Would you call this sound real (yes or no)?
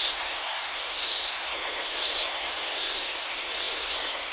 no